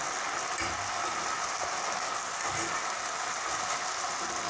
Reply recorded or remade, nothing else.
recorded